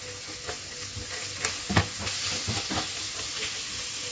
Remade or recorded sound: recorded